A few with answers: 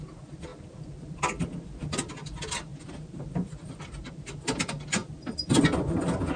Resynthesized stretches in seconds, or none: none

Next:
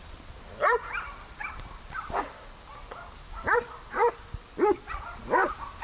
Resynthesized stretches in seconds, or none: none

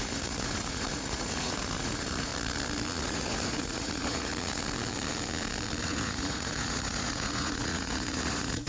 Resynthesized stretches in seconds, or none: 0.0-2.3 (vocoder, Vocos); 3.0-4.3; 5.8-8.7

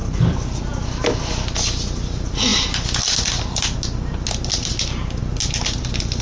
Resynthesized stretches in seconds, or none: none

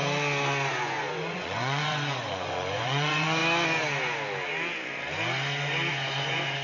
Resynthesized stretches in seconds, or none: 0.7-3.4 (vocoder, Vocos); 5.9-6.6

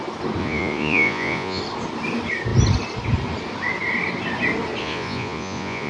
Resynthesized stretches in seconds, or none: 0.4-1.6 (vocoder, Vocos); 4.8-5.9